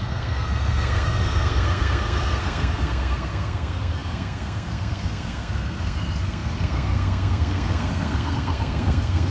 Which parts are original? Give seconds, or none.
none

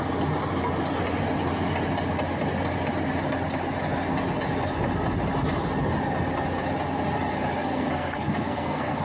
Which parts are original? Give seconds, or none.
0.0-7.6

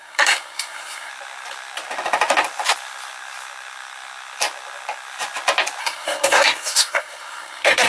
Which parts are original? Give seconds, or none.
1.1-5.8

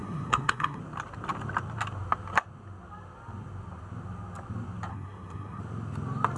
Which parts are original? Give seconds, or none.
0.8-4.9; 5.6-6.4

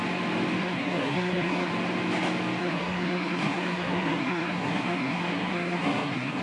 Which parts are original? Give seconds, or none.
0.0-0.6; 1.7-2.6

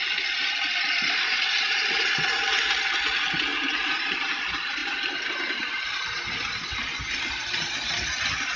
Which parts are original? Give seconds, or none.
0.0-8.6

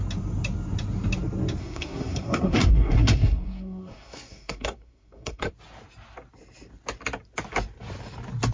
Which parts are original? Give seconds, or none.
0.0-1.6; 5.5-8.5

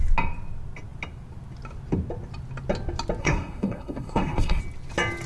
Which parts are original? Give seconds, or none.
0.0-3.2; 4.6-5.3